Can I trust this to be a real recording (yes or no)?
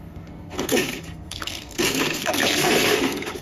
no